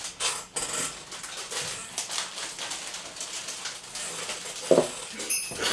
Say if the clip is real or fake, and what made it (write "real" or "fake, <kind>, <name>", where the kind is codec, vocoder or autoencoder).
real